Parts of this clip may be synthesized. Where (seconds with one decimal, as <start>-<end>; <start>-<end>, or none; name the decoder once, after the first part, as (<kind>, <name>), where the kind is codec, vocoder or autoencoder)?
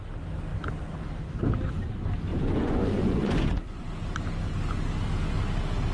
2.3-3.9 (vocoder, Vocos)